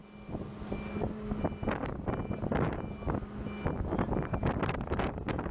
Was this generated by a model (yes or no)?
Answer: no